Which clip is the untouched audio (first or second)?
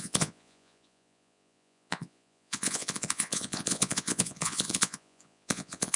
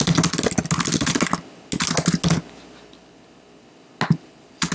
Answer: second